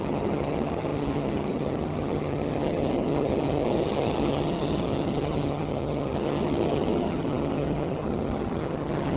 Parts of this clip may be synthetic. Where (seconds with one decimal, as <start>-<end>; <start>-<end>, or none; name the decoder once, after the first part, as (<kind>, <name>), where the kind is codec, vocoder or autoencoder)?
0.0-9.2 (vocoder, HiFi-GAN)